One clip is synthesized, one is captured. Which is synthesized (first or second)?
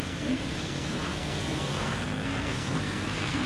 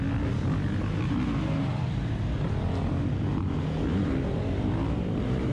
first